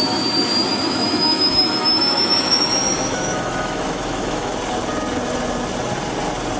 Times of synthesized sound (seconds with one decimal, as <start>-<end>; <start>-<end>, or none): 0.7-4.5